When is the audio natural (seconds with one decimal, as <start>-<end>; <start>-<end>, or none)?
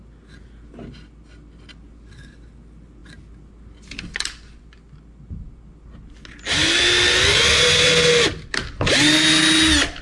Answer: 0.0-10.0